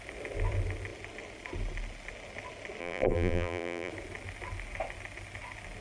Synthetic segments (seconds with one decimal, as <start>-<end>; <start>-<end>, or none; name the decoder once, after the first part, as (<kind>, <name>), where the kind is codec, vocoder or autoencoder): 2.8-3.9 (vocoder, BigVGAN v2)